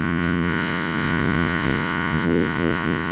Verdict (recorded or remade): remade